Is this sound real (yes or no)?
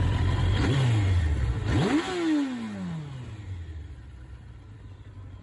yes